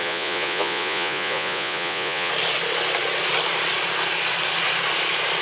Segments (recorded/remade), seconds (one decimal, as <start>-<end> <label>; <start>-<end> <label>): 0.0-2.3 remade; 2.3-5.4 recorded